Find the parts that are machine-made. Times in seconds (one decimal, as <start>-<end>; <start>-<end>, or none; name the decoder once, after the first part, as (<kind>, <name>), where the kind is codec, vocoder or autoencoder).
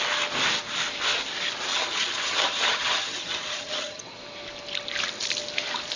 1.7-4.0 (vocoder, HiFi-GAN)